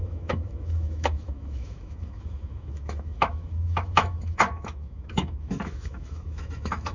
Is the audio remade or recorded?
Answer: remade